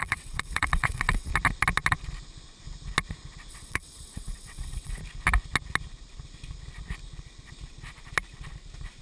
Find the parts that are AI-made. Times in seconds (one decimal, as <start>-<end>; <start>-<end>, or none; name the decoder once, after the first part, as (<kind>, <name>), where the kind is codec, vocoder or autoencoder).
0.0-1.3 (vocoder, WaveNeXt); 3.5-5.0